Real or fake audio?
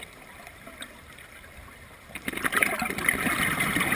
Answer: fake